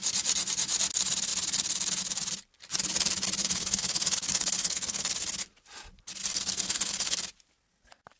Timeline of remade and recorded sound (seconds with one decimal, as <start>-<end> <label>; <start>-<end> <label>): 0.0-3.4 recorded; 3.4-5.1 remade; 5.1-6.2 recorded; 6.2-6.9 remade; 6.9-8.2 recorded